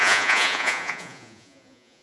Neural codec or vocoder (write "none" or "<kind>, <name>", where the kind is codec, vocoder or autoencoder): vocoder, Vocos